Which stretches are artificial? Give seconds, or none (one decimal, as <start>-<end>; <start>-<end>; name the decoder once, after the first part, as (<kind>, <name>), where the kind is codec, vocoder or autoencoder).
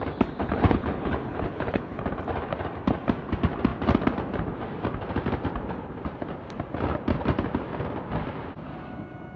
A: 0.4-2.0 (codec, HILCodec)